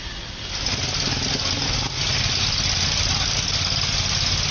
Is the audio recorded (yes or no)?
yes